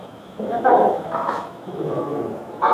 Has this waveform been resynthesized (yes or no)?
yes